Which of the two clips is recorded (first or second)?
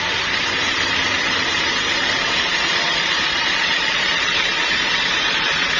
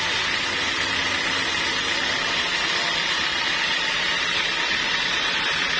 second